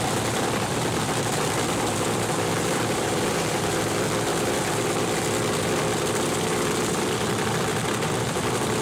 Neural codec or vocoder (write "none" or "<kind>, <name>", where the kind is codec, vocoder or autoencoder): vocoder, BigVGAN v2